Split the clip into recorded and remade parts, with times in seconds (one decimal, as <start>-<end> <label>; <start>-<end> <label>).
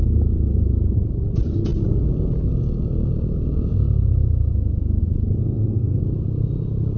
0.0-5.4 recorded; 5.4-6.0 remade; 6.0-7.0 recorded